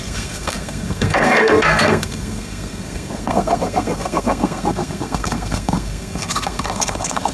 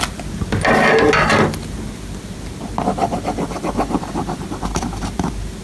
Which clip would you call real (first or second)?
second